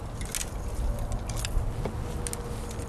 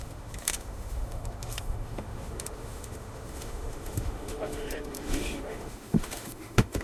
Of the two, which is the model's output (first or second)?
second